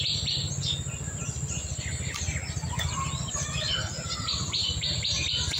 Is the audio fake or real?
real